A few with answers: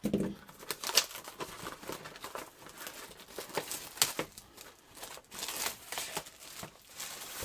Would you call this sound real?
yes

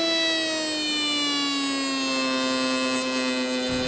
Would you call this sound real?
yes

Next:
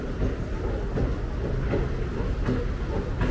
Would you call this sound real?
yes